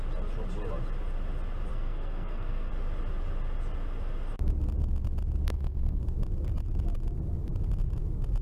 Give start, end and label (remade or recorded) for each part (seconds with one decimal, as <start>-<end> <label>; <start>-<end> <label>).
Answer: 0.0-1.7 recorded; 1.7-2.7 remade; 2.7-5.5 recorded; 5.5-6.0 remade; 6.0-8.4 recorded

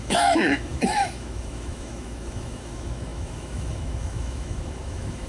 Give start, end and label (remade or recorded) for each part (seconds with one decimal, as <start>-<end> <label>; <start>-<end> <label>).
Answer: 0.0-5.3 remade